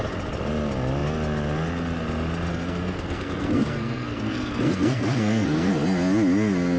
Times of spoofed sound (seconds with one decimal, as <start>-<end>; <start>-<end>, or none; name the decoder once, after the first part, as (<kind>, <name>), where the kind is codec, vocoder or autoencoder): 2.5-5.7 (codec, SNAC)